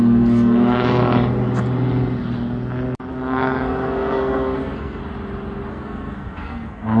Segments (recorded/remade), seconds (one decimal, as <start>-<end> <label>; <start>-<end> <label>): 0.0-1.0 remade; 1.0-3.1 recorded; 3.1-5.0 remade; 5.0-5.7 recorded; 5.7-7.0 remade